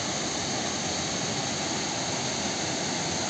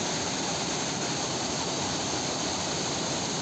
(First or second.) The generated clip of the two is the second